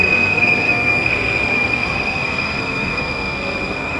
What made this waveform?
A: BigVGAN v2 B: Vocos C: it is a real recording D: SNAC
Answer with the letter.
D